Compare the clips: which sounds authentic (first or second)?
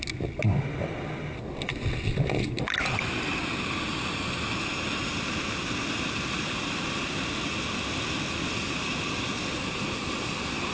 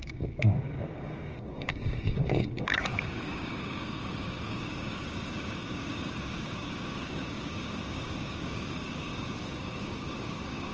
first